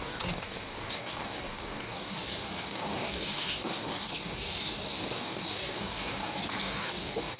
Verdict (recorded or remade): remade